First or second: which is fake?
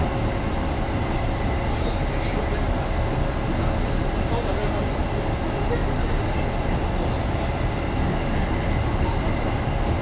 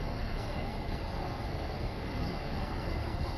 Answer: second